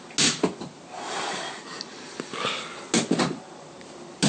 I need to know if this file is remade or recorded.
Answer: recorded